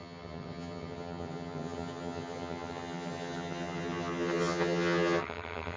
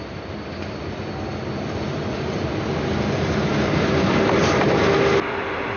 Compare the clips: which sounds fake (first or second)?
first